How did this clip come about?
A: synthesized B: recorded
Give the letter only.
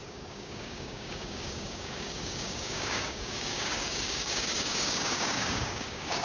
A